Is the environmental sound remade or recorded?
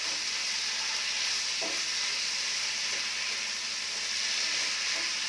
recorded